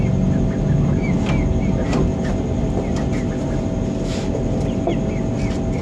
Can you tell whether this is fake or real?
real